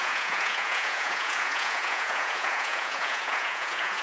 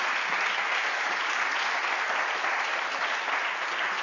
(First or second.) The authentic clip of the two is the second